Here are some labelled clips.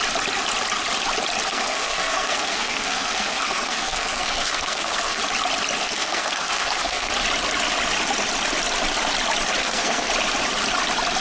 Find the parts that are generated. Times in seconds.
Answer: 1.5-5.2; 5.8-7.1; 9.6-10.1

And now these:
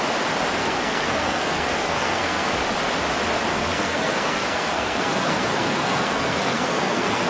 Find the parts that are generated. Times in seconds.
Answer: 0.6-2.5; 3.5-7.3

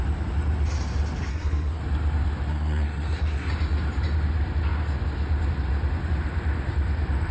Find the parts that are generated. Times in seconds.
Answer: 1.3-1.8; 2.5-3.5

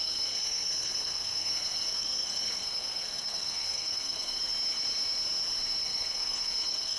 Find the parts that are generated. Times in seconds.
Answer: 0.0-4.4; 5.8-7.0